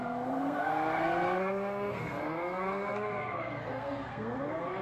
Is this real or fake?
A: fake